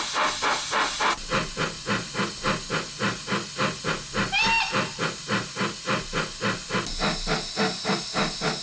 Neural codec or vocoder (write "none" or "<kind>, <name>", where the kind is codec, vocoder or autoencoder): none